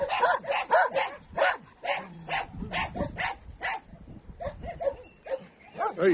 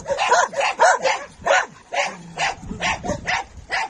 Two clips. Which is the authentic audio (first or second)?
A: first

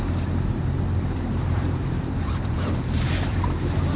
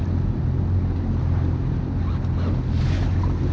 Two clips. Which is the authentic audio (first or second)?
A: second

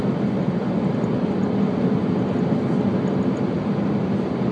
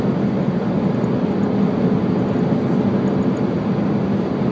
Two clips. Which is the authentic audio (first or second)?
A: second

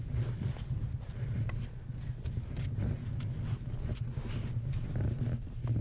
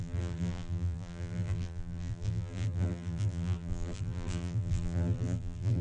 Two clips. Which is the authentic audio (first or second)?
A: first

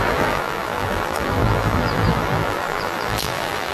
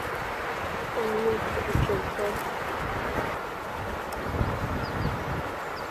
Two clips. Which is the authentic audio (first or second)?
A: second